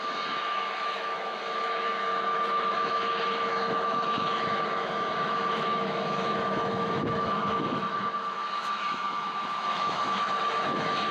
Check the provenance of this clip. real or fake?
fake